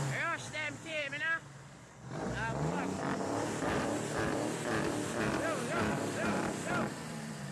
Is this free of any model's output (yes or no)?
no